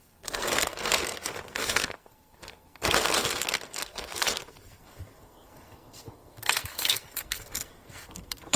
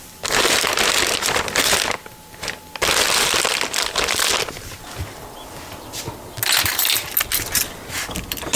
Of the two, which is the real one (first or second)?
second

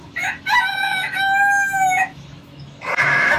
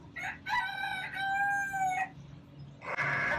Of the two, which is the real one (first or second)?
second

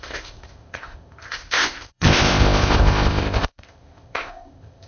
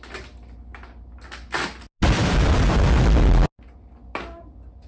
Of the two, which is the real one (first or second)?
second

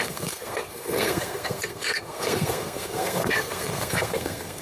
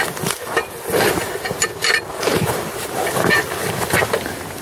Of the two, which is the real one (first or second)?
second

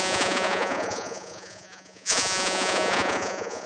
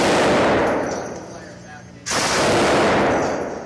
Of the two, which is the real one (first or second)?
second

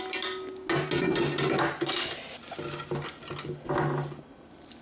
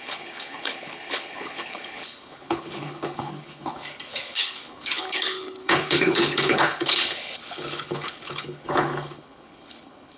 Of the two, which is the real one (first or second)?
first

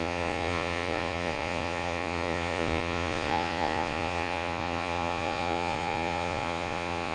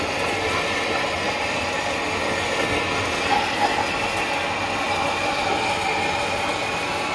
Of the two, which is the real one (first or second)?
second